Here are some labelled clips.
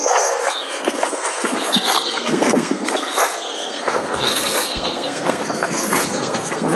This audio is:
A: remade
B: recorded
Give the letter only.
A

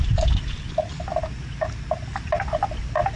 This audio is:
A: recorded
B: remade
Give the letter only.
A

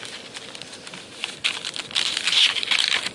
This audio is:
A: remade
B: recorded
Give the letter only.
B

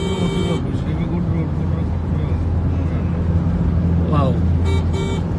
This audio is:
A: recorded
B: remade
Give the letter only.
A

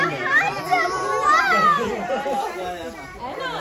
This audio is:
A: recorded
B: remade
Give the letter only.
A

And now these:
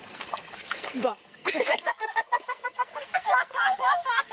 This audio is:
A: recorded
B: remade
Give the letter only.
B